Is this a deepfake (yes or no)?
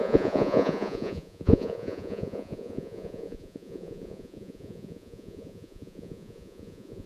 yes